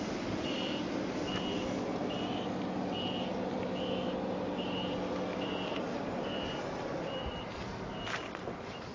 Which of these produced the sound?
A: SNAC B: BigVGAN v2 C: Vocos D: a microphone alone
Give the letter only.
D